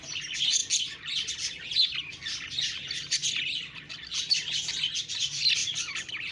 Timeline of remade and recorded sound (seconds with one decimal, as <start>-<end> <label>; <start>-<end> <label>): 0.0-3.2 recorded; 3.2-4.3 remade; 4.3-5.6 recorded; 5.6-6.3 remade